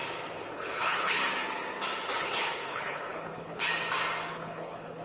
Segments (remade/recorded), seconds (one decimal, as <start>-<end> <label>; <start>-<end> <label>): 0.0-0.5 recorded; 0.5-1.2 remade; 1.2-2.1 recorded; 2.1-3.7 remade; 3.7-4.3 recorded; 4.3-5.0 remade